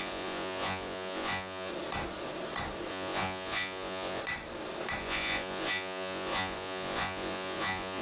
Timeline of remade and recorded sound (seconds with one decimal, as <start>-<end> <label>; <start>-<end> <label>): 0.0-1.7 remade; 1.7-2.9 recorded; 2.9-4.2 remade; 4.2-5.0 recorded; 5.0-8.0 remade

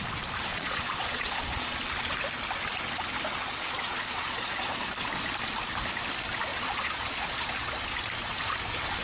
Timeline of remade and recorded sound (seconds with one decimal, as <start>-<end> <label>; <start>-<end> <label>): 0.0-0.5 recorded; 0.5-1.8 remade; 1.8-3.6 recorded; 3.6-4.7 remade; 4.7-6.5 recorded; 6.5-7.5 remade; 7.5-9.0 recorded